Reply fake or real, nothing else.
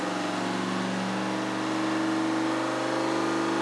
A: real